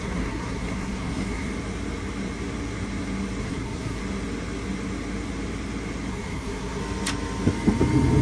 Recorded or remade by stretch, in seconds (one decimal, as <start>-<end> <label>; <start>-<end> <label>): 0.0-1.5 remade; 1.5-3.4 recorded; 3.4-4.0 remade; 4.0-6.1 recorded; 6.1-6.8 remade; 6.8-8.2 recorded